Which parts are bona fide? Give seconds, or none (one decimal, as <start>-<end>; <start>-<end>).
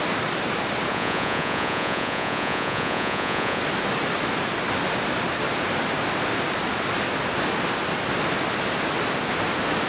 0.0-0.9; 3.6-9.9